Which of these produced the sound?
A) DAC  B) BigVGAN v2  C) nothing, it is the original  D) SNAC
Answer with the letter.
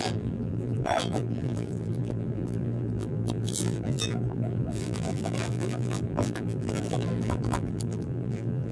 B